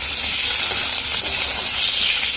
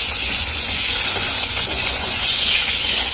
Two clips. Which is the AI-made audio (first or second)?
second